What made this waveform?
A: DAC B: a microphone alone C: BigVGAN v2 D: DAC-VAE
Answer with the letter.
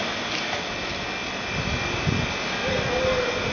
B